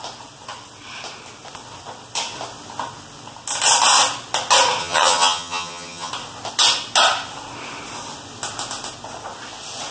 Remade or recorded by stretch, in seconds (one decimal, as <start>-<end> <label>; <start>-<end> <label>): 0.0-4.8 recorded; 4.8-6.1 remade; 6.1-9.9 recorded